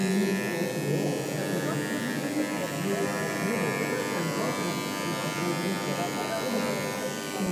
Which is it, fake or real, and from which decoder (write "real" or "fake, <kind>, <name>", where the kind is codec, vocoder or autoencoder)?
real